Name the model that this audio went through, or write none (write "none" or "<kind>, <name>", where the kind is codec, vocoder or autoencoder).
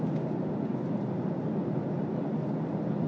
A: none